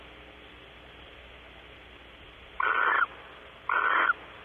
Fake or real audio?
real